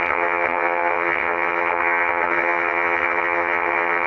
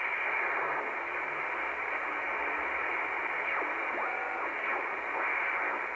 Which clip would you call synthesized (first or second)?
first